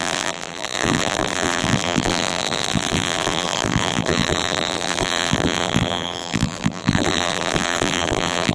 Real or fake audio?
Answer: fake